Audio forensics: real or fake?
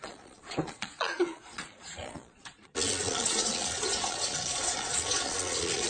fake